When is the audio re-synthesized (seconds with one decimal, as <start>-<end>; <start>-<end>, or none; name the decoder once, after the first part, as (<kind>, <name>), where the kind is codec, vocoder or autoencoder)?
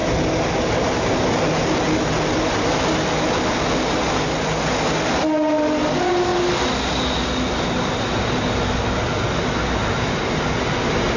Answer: none